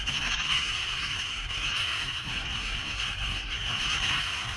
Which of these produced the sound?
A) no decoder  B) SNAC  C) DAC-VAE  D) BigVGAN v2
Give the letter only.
B